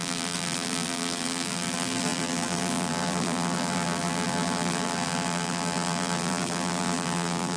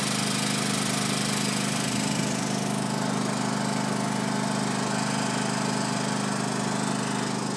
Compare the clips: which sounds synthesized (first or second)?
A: first